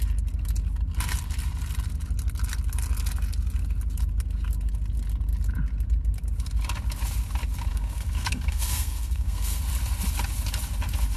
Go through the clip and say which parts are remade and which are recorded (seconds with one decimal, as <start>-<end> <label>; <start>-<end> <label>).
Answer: 0.0-7.7 recorded; 7.7-9.6 remade; 9.6-11.2 recorded